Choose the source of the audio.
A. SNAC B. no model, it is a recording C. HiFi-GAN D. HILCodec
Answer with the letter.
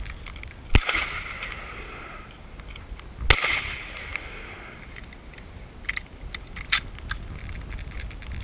B